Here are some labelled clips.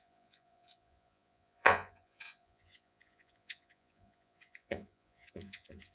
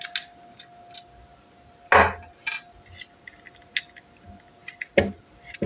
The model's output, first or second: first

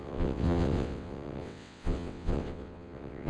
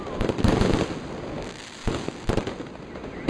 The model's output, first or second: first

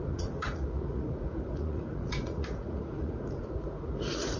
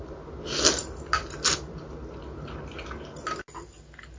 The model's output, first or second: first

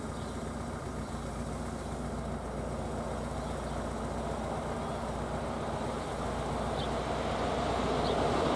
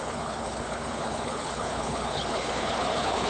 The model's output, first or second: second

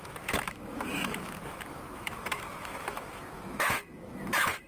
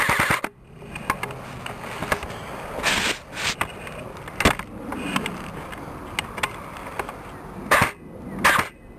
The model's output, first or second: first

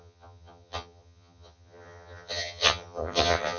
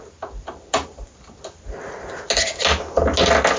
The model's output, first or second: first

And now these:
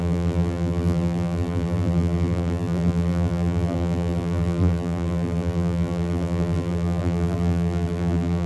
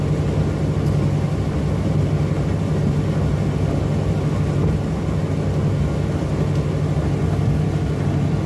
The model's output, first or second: first